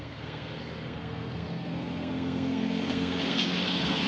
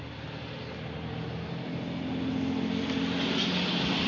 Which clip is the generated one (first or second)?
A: first